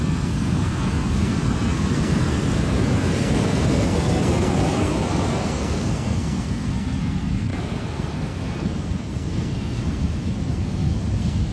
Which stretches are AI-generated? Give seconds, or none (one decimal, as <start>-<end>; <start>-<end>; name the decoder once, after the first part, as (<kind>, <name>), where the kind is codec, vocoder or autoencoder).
0.0-11.5 (codec, SNAC)